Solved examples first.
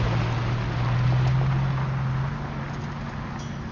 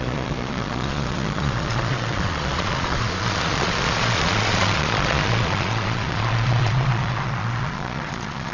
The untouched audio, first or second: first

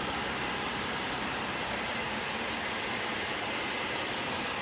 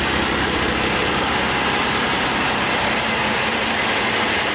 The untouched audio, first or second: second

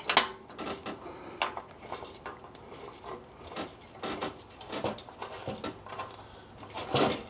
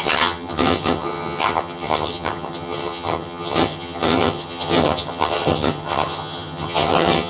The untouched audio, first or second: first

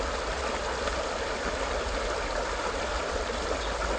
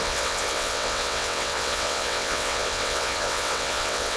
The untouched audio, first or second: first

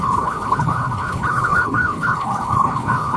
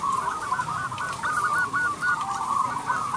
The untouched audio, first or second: second